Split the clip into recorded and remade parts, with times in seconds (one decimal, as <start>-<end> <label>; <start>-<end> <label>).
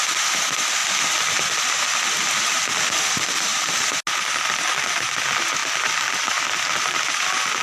0.0-0.8 recorded; 0.8-1.8 remade; 1.8-3.5 recorded; 3.5-4.0 remade; 4.0-5.6 recorded; 5.6-6.4 remade; 6.4-7.6 recorded